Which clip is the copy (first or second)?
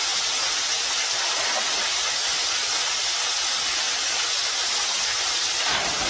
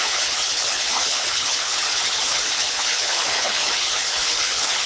second